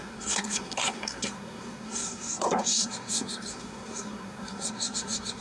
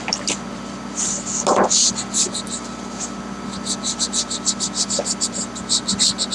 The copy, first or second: first